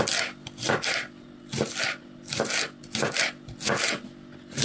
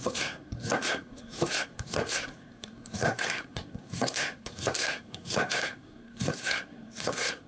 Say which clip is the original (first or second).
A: first